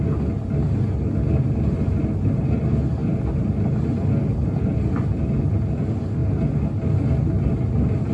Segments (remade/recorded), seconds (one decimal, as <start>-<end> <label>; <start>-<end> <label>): 0.0-8.1 recorded